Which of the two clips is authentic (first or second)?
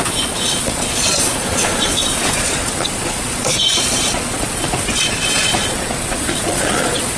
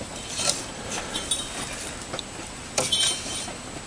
second